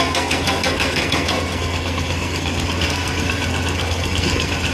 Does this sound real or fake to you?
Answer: fake